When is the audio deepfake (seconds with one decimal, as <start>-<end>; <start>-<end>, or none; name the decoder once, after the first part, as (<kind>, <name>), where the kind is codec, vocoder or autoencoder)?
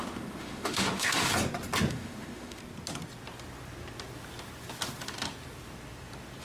0.0-1.3 (autoencoder, DAC-VAE); 1.9-2.6